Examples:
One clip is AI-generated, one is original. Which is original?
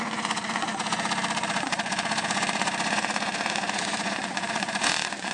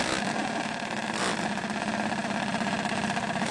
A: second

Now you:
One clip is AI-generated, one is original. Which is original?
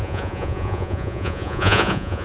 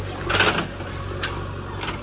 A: second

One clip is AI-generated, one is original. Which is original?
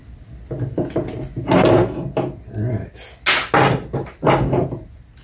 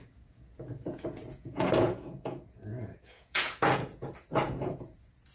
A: first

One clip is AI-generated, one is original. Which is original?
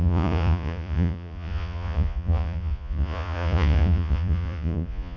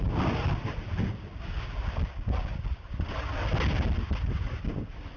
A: second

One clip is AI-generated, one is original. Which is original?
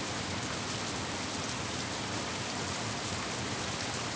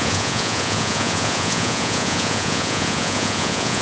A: first